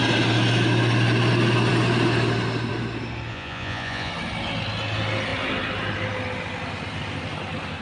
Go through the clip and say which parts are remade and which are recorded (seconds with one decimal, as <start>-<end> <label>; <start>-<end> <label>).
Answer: 0.0-3.3 recorded; 3.3-4.1 remade; 4.1-7.8 recorded